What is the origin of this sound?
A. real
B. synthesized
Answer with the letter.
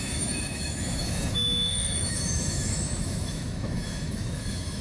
B